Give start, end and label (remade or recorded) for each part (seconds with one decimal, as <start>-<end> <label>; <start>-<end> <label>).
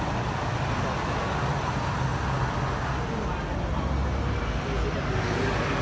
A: 0.0-5.8 recorded